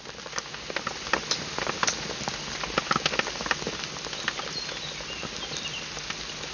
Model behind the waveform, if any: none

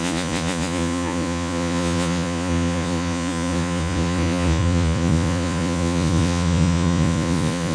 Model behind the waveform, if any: vocoder, Vocos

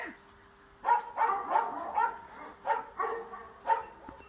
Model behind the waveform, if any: none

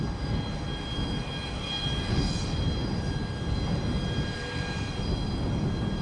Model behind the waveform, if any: none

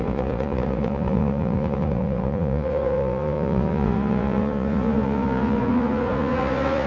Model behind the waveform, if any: vocoder, Vocos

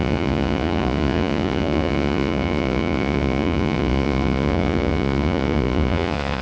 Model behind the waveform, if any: vocoder, Vocos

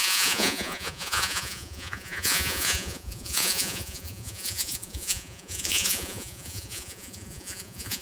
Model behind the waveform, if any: vocoder, Vocos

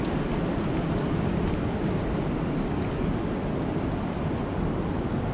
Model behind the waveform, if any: none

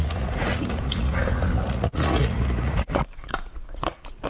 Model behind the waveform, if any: vocoder, Vocos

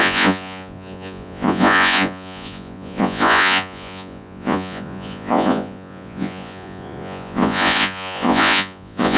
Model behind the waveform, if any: vocoder, Vocos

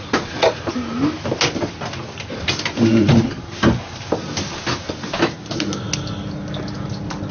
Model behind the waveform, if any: none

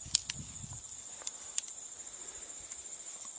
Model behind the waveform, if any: none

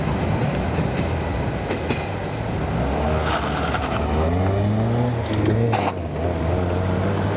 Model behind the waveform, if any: none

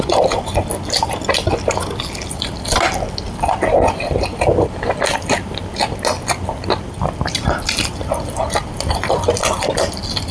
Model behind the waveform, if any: none